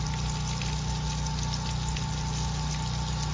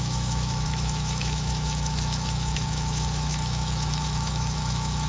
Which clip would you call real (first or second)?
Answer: first